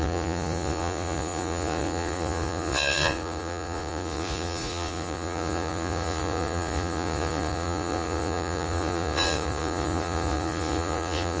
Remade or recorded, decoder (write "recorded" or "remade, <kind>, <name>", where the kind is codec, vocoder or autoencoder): remade, vocoder, Vocos